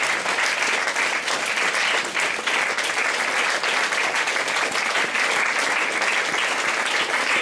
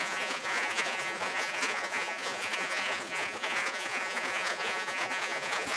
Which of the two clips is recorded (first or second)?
first